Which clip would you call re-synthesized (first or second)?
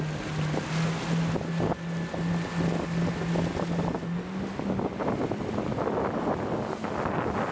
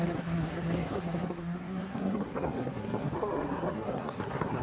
second